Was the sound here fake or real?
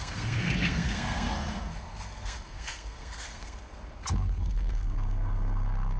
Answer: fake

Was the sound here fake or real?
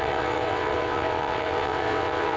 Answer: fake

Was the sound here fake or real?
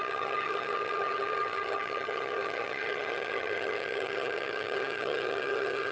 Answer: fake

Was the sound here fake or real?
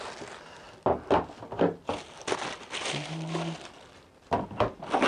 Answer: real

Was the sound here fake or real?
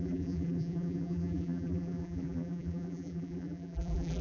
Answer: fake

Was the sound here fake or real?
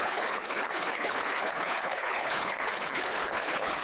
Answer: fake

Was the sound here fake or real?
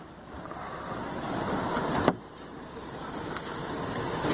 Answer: fake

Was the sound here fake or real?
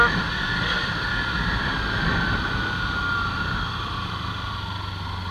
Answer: real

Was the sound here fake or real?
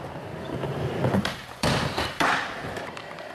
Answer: fake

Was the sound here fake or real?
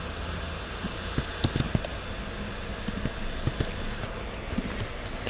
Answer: real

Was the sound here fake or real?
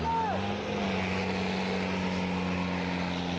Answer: real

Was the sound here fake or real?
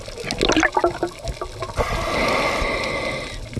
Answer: real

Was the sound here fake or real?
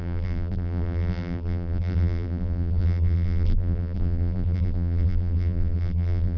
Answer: fake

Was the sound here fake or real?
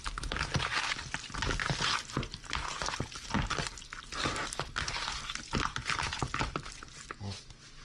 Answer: real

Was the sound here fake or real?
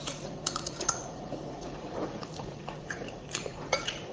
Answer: fake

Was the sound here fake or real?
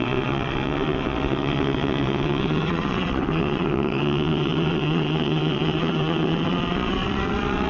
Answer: fake